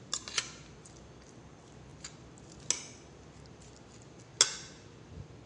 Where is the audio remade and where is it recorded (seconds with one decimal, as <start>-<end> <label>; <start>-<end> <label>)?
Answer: 0.0-5.5 recorded